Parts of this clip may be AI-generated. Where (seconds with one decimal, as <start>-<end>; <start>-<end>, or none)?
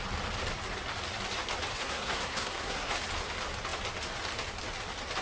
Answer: 1.7-2.9